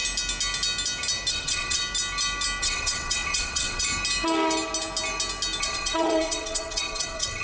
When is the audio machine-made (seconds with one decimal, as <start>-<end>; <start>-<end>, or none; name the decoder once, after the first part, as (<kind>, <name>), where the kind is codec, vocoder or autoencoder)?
1.3-1.8 (vocoder, WaveNeXt); 2.6-3.9; 5.6-7.4